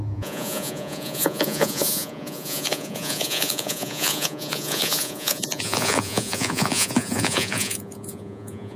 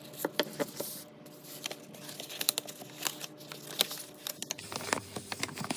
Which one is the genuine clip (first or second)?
second